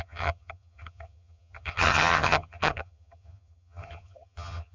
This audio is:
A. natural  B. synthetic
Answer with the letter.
B